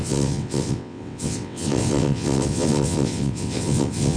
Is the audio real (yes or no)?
no